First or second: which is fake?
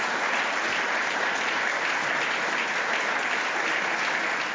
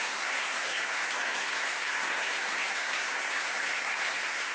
second